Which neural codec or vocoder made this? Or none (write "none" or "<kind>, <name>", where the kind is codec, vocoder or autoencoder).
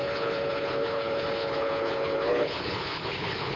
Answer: codec, HILCodec